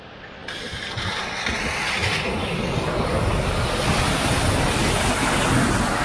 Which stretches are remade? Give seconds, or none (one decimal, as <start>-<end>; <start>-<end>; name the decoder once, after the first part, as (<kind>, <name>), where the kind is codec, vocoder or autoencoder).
none